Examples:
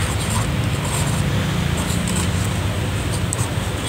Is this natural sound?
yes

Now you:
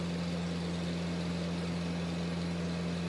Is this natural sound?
yes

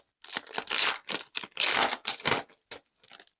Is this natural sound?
yes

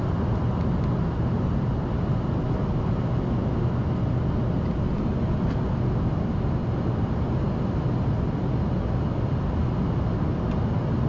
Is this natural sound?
yes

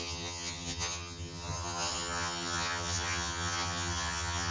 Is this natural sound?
no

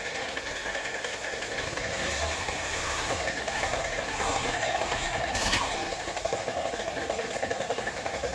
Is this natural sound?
no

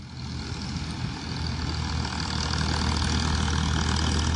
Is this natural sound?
yes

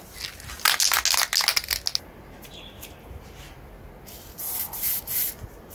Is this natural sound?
yes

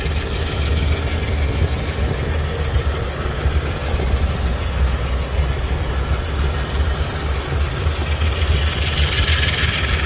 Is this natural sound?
yes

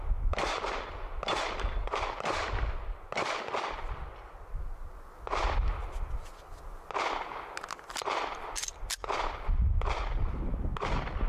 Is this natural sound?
yes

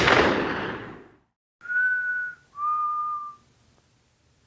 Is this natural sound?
yes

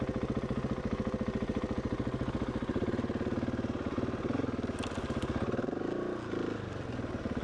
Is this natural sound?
yes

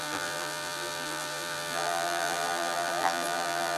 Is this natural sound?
no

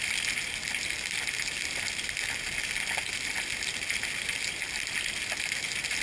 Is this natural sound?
yes